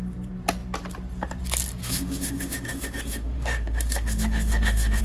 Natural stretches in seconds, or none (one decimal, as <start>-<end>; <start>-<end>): 0.0-1.8